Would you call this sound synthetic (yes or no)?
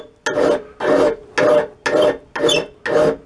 no